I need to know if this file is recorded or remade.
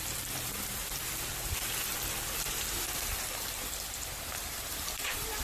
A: remade